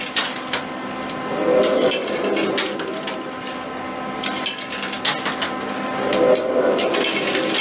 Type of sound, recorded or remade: recorded